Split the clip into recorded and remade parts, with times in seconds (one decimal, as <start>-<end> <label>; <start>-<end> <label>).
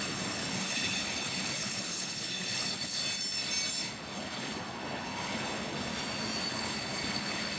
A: 0.0-3.0 remade; 3.0-3.8 recorded; 3.8-5.9 remade; 5.9-6.5 recorded; 6.5-7.6 remade